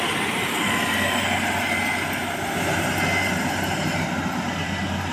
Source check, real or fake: real